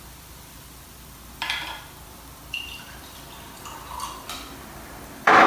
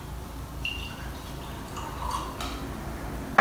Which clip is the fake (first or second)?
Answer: first